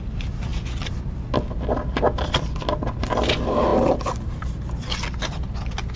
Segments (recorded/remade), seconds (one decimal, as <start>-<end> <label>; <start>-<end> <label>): 0.0-6.0 recorded